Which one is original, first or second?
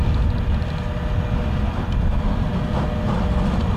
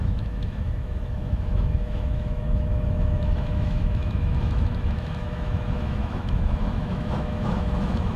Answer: first